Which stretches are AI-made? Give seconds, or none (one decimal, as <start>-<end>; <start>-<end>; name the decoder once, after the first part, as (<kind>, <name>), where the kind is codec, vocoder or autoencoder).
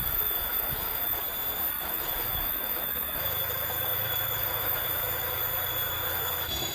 0.0-1.2 (autoencoder, DAC-VAE); 1.7-5.4; 6.1-6.7